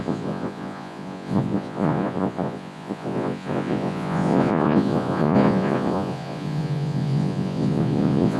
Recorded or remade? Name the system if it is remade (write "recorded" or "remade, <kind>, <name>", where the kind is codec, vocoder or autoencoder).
remade, vocoder, Vocos